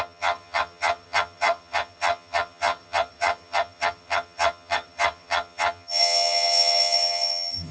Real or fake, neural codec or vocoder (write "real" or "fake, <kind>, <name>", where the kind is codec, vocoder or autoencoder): fake, vocoder, HiFi-GAN